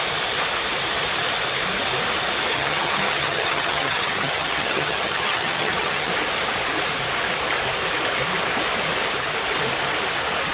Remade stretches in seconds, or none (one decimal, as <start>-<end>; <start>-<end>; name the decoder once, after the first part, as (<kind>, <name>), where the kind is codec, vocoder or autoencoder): 2.5-6.1 (vocoder, HiFi-GAN)